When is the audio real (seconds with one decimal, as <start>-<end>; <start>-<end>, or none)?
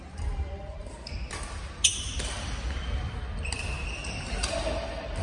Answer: 0.0-5.2